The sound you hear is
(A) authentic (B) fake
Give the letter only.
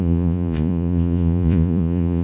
B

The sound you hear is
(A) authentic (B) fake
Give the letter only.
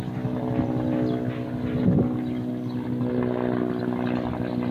A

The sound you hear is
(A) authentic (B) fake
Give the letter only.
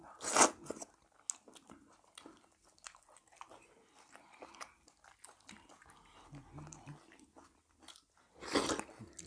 A